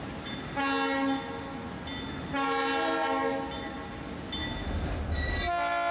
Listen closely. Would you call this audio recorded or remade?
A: recorded